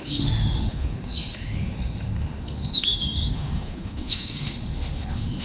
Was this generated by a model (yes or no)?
yes